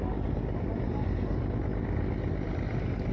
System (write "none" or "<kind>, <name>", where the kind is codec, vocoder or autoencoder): none